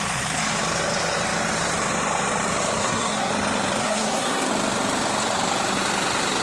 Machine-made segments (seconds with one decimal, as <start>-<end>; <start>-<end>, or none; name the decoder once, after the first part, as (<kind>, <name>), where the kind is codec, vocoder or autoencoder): 2.8-3.3 (codec, SNAC); 3.8-4.5